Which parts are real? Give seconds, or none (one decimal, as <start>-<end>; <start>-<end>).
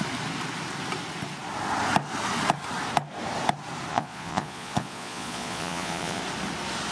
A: 0.0-3.9; 6.2-6.9